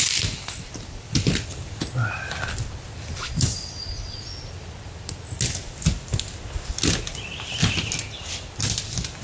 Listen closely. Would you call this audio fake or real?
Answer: real